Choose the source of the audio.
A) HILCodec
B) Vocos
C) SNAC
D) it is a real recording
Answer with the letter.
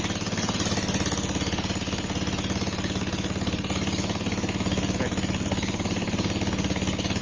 D